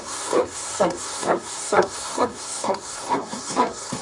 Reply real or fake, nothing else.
fake